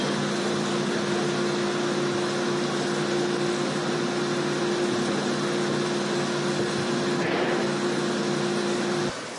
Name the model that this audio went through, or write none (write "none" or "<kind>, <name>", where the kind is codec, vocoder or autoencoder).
none